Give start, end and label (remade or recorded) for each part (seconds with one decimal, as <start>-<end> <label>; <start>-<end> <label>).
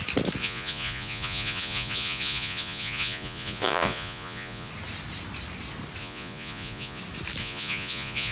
0.0-0.4 recorded; 0.4-4.7 remade; 4.7-6.0 recorded; 6.0-7.0 remade; 7.0-7.4 recorded; 7.4-8.3 remade